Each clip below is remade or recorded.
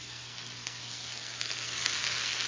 remade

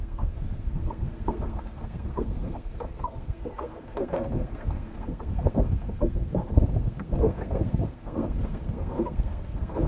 remade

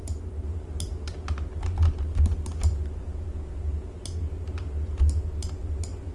recorded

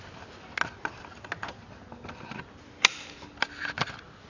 recorded